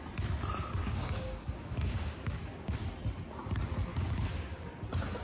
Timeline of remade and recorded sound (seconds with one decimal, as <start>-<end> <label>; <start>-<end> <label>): 0.0-0.8 recorded; 0.8-2.9 remade; 2.9-3.9 recorded; 3.9-4.7 remade; 4.7-5.2 recorded